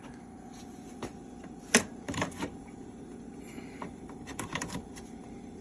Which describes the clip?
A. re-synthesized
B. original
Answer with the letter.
A